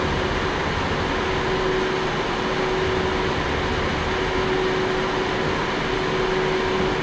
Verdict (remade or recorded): recorded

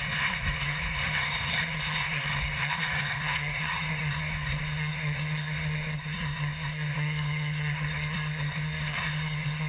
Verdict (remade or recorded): remade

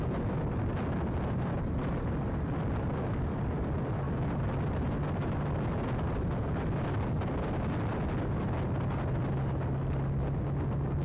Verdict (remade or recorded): recorded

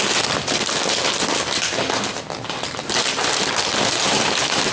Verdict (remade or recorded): recorded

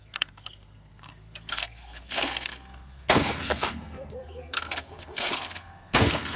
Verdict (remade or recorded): remade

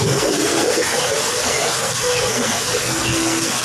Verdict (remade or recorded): remade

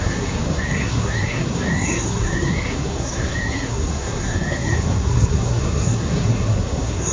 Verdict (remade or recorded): remade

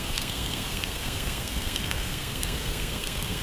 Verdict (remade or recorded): remade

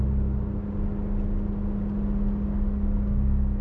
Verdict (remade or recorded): recorded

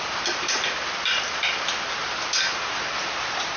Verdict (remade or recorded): recorded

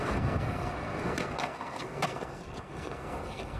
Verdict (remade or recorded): remade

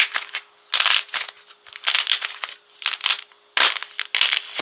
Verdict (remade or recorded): recorded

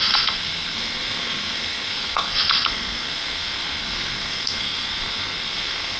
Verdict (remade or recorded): remade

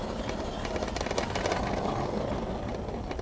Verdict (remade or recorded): recorded